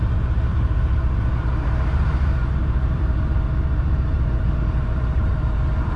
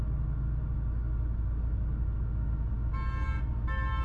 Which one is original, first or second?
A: second